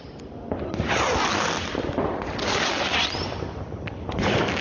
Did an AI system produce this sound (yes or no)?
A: no